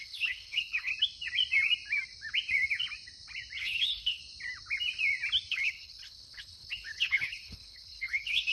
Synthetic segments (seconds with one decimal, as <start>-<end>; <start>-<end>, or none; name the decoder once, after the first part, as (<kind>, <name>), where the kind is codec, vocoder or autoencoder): 0.0-0.9 (codec, HILCodec); 3.6-4.2; 5.5-8.5